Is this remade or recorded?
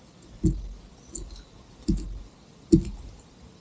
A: recorded